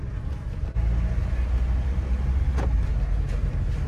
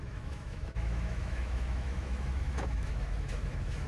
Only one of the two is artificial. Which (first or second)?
second